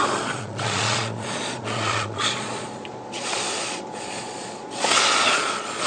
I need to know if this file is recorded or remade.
remade